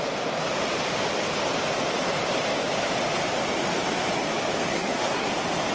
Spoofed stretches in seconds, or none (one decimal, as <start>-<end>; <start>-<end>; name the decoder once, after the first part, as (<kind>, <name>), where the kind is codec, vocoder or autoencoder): 4.7-5.3 (codec, SNAC)

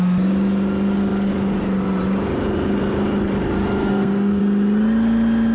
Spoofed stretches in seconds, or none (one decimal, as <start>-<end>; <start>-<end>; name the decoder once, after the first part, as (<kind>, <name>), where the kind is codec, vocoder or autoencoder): 3.8-4.4 (codec, SNAC)

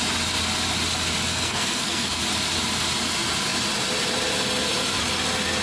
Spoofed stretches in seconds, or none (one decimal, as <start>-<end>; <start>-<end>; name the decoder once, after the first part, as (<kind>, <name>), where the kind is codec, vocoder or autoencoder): 1.3-2.2 (codec, SNAC)

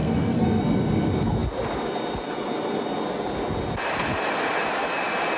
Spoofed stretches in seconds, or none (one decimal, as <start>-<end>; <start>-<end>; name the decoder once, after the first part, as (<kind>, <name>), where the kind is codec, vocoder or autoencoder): 0.0-0.6 (codec, SNAC)